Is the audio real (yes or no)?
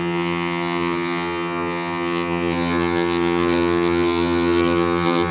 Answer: no